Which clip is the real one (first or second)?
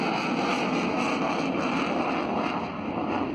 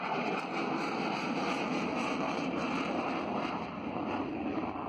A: first